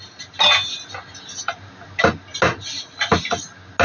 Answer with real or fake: real